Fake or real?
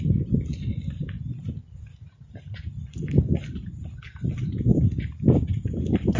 real